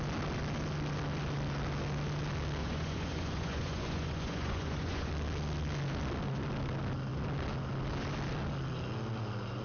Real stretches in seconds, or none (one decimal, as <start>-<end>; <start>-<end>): 0.0-2.6; 5.1-9.6